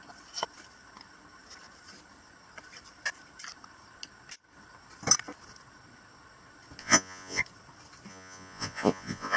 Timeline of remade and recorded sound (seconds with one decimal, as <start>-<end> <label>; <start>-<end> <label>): 0.0-6.8 recorded; 6.8-7.4 remade; 7.4-8.1 recorded; 8.1-9.4 remade